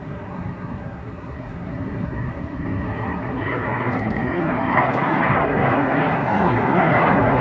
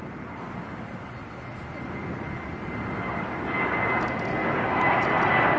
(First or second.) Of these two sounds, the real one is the second